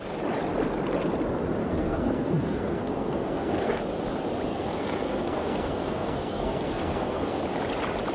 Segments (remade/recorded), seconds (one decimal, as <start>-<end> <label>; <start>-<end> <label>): 0.0-1.6 recorded; 1.6-3.8 remade; 3.8-4.5 recorded; 4.5-7.4 remade; 7.4-8.1 recorded